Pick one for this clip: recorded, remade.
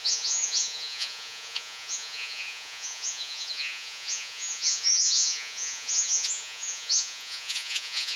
remade